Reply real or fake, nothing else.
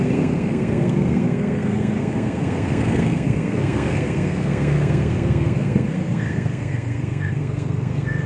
fake